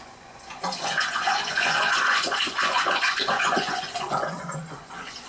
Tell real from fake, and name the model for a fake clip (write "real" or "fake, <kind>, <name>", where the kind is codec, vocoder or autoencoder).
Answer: fake, vocoder, Vocos